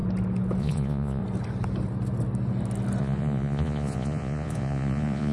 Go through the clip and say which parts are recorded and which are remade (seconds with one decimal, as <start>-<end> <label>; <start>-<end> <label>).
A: 0.0-0.6 recorded; 0.6-1.2 remade; 1.2-3.0 recorded; 3.0-5.3 remade